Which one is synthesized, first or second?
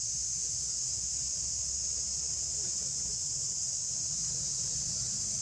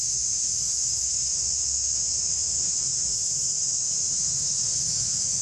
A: second